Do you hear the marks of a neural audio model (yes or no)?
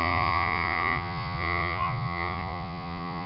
yes